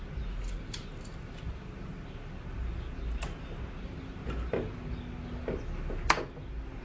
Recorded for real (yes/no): yes